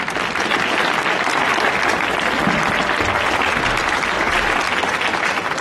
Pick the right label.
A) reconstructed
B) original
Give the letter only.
B